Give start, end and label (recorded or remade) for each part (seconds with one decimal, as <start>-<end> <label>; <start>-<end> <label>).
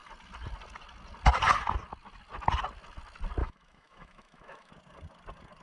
0.0-3.4 recorded; 3.4-4.7 remade; 4.7-5.6 recorded